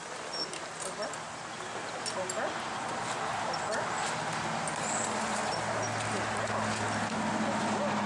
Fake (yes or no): no